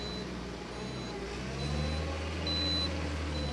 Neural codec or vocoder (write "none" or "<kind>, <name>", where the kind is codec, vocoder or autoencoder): none